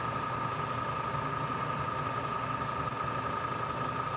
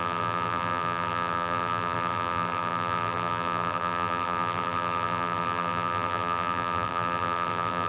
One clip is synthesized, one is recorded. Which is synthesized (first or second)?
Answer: second